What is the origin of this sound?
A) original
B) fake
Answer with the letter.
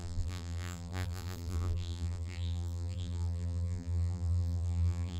B